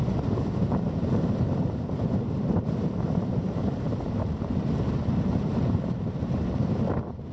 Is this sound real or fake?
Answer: fake